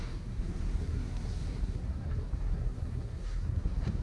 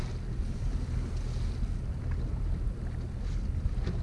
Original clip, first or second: second